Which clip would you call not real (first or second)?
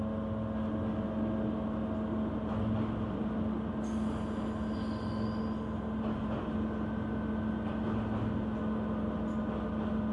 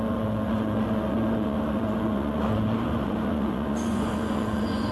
second